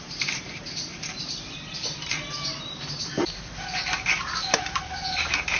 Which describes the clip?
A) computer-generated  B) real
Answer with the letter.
A